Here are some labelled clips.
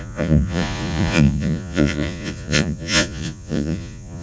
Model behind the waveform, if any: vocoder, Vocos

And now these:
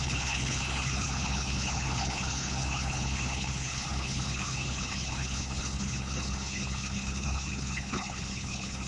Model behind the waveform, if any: codec, HILCodec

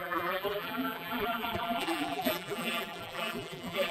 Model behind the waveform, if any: vocoder, BigVGAN v2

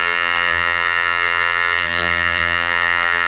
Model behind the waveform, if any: vocoder, BigVGAN v2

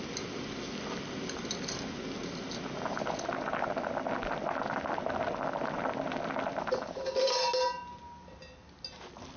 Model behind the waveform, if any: none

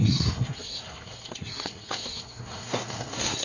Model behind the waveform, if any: codec, SNAC